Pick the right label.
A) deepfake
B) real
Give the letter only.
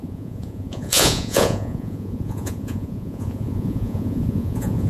A